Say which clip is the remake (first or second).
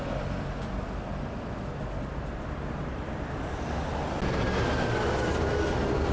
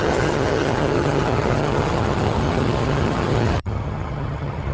second